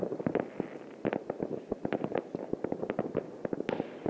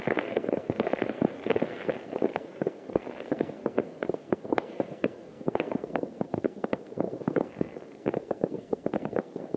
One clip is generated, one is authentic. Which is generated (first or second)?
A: second